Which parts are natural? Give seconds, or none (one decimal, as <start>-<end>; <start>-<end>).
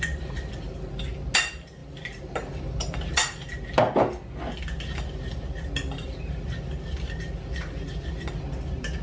0.0-9.0